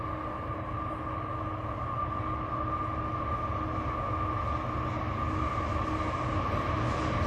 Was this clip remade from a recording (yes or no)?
no